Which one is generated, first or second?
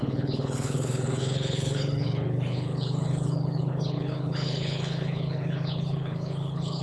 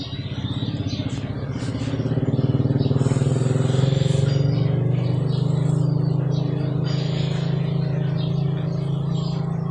first